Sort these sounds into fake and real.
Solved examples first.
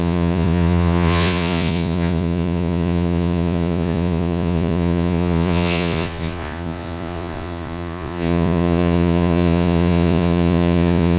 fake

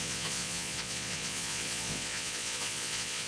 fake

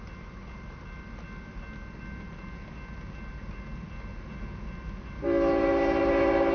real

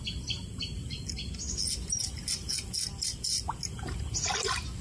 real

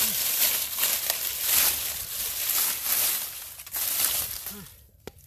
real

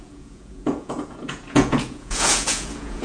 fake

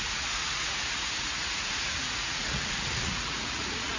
fake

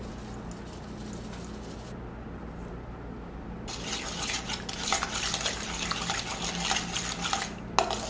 real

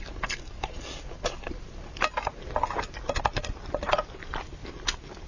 real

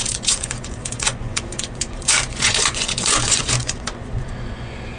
fake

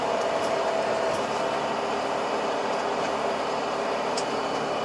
real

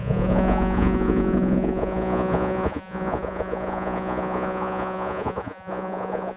fake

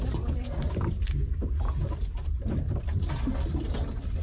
real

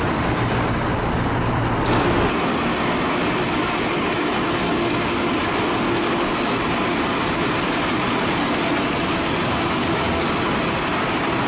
real